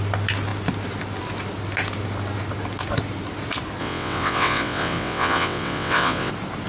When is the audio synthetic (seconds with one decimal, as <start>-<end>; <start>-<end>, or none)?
3.8-6.3